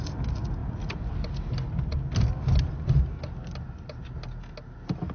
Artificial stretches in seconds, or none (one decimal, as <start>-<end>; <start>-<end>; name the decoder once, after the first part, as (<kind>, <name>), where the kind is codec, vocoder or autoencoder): none